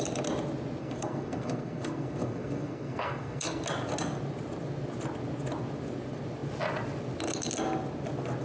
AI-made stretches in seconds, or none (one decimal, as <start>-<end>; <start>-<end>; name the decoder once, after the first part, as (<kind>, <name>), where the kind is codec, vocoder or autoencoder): 0.8-3.6 (codec, SNAC)